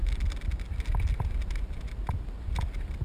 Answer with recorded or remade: recorded